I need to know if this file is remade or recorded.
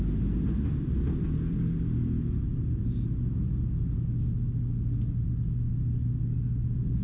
recorded